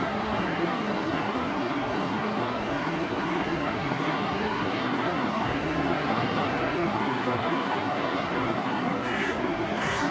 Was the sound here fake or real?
fake